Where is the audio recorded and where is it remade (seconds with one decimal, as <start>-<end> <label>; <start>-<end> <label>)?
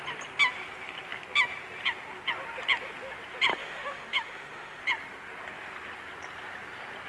0.0-3.5 recorded; 3.5-4.8 remade; 4.8-7.1 recorded